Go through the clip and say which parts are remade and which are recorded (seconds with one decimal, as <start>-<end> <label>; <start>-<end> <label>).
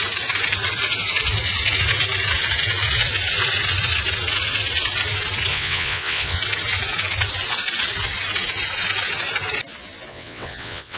0.0-5.5 recorded; 5.5-6.4 remade; 6.4-10.1 recorded; 10.1-11.0 remade